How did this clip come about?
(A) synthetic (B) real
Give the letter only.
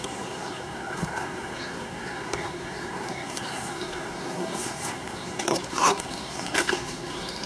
A